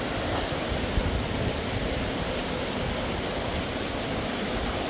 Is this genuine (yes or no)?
yes